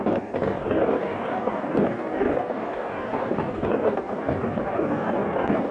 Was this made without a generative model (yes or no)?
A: no